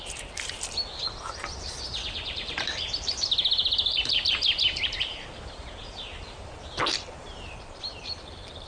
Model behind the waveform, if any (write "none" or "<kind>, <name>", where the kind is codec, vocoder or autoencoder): vocoder, BigVGAN v2